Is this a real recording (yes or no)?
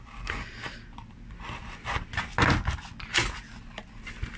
yes